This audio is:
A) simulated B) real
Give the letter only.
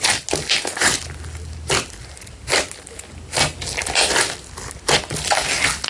B